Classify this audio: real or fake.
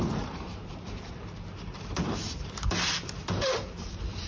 fake